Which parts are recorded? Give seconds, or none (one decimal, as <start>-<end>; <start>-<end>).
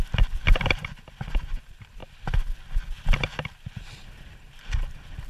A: 0.0-5.3